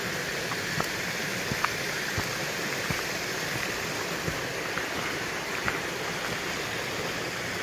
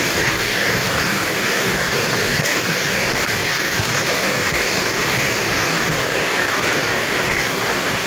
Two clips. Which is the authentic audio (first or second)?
first